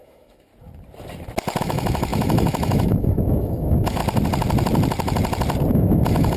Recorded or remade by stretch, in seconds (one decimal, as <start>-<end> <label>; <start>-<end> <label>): 0.0-0.5 remade; 0.5-1.6 recorded; 1.6-4.0 remade; 4.0-5.7 recorded; 5.7-6.4 remade